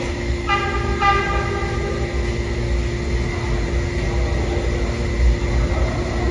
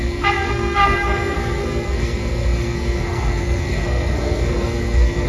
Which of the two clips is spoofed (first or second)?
second